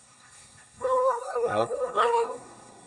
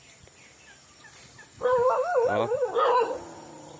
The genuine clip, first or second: second